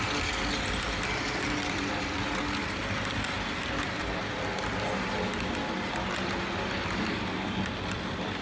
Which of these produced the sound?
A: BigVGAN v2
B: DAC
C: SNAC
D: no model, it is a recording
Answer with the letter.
D